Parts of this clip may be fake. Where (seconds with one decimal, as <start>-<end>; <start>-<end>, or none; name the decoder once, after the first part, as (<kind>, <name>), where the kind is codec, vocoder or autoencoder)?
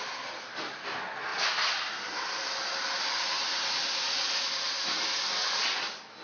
none